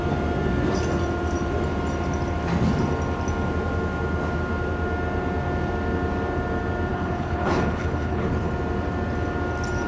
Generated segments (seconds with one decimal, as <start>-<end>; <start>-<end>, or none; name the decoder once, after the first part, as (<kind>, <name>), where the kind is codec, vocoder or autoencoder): 6.9-8.5 (codec, HILCodec)